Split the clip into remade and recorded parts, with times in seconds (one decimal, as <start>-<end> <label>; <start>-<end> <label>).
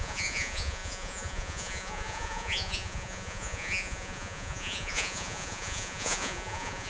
0.0-6.9 remade